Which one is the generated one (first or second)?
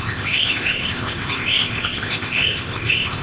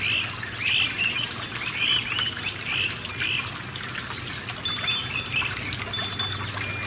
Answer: first